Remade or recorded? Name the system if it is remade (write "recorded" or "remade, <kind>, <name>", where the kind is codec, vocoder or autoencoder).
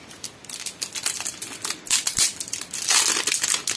recorded